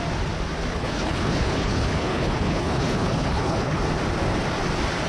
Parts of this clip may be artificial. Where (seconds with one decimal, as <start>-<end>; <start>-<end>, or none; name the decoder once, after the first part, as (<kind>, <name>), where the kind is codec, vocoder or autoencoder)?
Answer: 0.7-3.8 (codec, HILCodec)